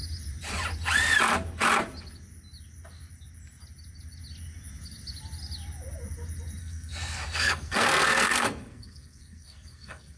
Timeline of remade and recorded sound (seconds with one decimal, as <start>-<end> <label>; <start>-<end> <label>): 0.0-6.6 recorded; 6.6-10.2 remade